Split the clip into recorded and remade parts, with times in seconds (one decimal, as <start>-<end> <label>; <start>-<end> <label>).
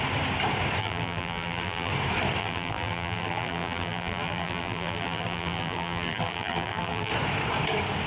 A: 0.0-0.8 recorded; 0.8-1.9 remade; 1.9-2.4 recorded; 2.4-7.1 remade; 7.1-8.1 recorded